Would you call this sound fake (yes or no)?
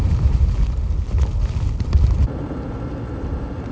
no